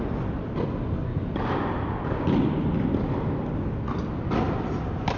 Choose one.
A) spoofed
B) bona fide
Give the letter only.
B